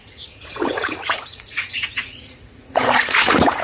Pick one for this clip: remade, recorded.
remade